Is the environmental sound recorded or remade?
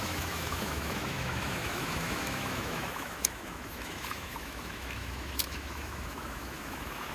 remade